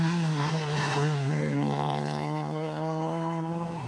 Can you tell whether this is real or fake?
fake